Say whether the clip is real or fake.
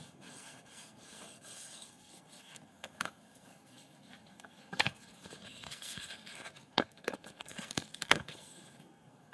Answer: fake